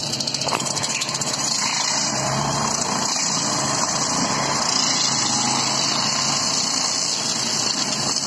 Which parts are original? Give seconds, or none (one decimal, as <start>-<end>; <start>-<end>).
4.6-8.3